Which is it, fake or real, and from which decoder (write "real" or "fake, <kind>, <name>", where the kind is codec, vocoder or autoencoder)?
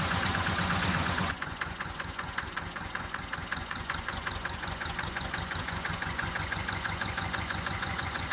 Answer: fake, vocoder, Vocos